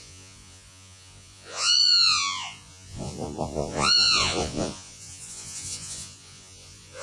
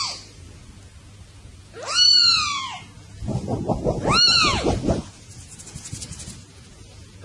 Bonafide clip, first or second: second